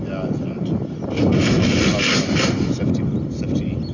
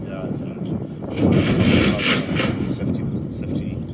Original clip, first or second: second